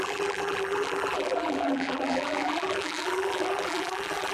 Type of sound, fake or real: fake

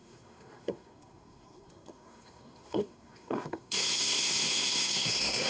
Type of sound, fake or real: fake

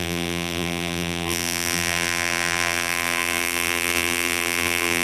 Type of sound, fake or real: fake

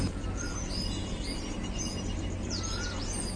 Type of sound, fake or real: real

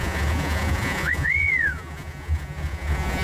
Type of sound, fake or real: fake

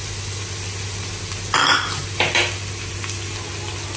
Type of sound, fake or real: real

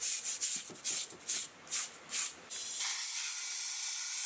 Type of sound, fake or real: real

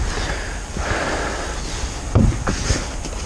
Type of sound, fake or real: real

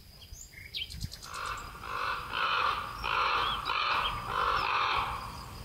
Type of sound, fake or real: real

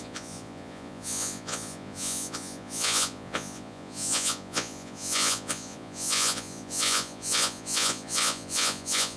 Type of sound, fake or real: fake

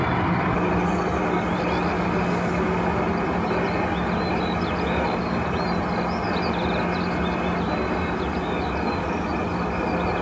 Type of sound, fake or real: real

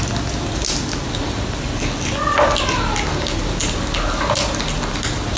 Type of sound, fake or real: real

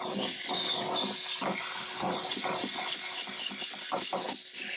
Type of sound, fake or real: real